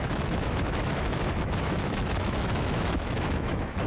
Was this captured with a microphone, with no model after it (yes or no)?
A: no